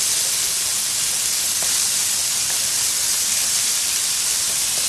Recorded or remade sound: recorded